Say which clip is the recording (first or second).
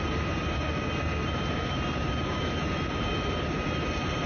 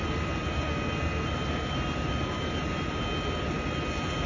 second